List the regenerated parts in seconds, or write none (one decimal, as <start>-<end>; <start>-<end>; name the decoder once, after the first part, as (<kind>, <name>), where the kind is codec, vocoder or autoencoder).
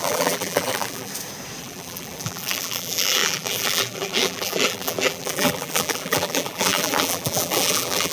0.0-1.1 (vocoder, BigVGAN v2); 1.6-8.1